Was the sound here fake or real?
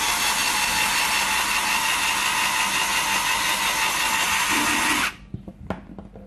real